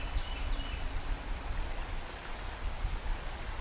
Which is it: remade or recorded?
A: recorded